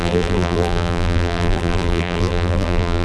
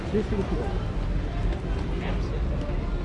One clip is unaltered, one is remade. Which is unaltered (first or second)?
second